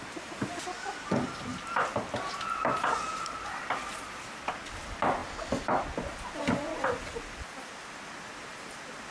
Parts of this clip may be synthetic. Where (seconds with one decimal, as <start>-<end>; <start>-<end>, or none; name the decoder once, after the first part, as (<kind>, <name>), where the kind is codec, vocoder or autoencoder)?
none